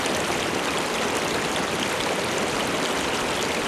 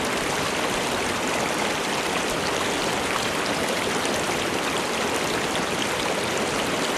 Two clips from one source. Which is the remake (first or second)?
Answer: second